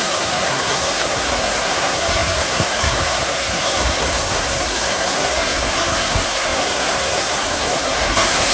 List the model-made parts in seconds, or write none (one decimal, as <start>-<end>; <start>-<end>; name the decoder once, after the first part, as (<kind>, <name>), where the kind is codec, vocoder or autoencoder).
0.0-8.5 (codec, SNAC)